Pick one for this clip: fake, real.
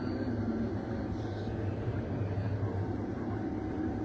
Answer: fake